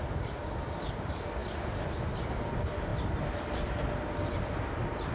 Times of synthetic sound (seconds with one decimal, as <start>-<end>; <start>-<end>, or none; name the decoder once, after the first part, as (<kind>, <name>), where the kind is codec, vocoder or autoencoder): none